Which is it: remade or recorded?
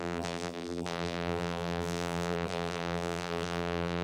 remade